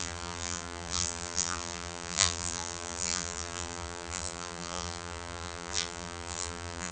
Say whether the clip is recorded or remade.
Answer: remade